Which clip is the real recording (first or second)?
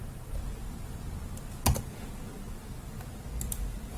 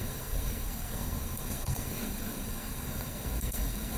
first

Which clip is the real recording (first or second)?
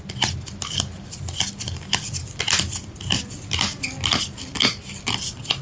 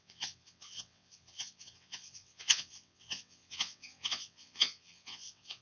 first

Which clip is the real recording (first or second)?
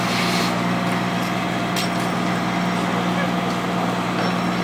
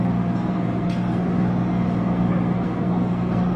first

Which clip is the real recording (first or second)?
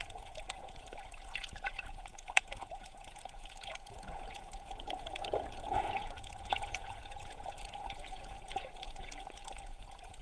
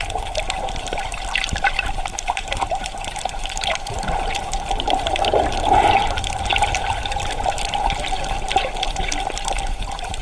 second